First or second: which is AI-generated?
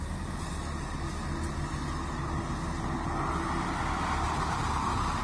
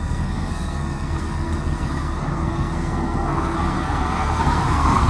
second